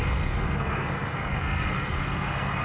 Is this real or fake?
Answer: fake